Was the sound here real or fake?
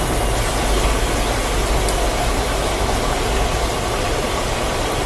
real